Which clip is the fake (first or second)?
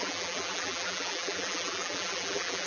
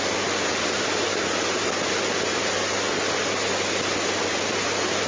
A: first